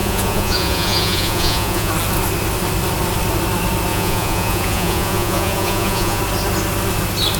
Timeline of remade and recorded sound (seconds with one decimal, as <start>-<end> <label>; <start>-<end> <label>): 0.0-1.9 remade; 1.9-3.9 recorded; 3.9-6.2 remade; 6.2-7.4 recorded